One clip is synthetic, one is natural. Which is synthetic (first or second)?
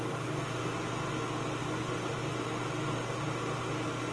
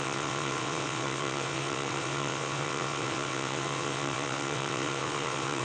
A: second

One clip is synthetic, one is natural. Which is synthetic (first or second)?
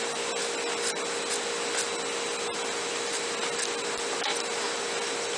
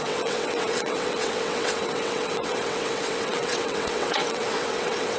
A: second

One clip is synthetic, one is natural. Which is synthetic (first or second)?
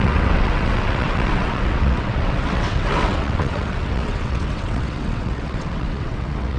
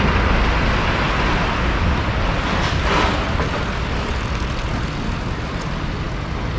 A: first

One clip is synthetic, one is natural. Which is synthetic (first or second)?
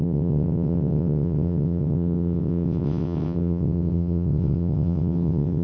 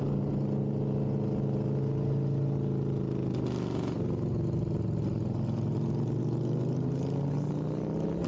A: first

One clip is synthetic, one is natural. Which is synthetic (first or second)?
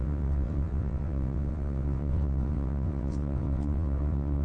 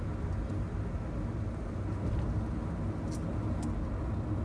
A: first